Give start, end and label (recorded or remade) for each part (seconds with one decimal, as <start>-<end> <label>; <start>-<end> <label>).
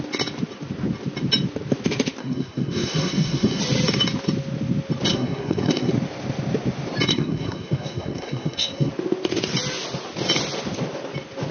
0.0-2.2 recorded; 2.2-3.6 remade; 3.6-5.1 recorded; 5.1-5.9 remade; 5.9-7.1 recorded; 7.1-8.9 remade; 8.9-11.5 recorded